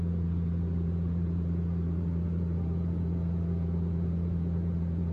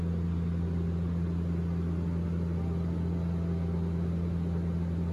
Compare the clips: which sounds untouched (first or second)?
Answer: second